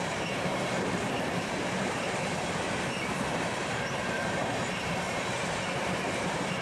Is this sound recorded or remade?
remade